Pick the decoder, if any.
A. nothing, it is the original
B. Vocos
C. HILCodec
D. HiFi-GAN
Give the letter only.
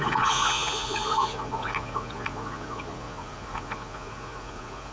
B